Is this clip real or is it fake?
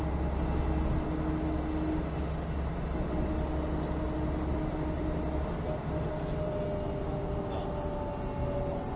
real